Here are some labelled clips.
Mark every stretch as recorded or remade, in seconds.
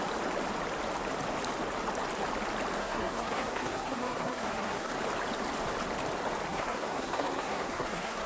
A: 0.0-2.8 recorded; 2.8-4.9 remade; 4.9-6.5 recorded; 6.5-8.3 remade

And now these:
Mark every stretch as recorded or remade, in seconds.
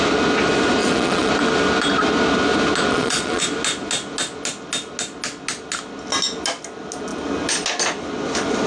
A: 0.0-0.8 recorded; 0.8-1.3 remade; 1.3-2.9 recorded; 2.9-3.4 remade; 3.4-8.7 recorded